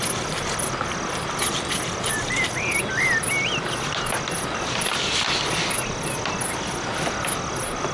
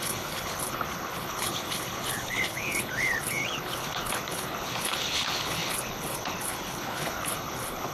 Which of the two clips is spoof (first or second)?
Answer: second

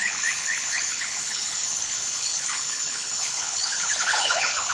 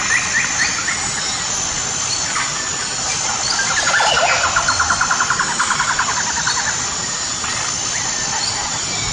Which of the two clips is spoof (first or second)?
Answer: first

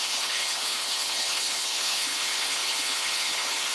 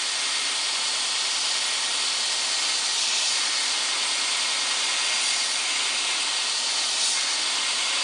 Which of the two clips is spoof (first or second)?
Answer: first